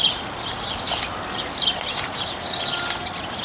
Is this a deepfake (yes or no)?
no